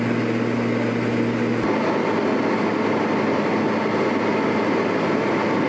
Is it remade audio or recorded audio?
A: recorded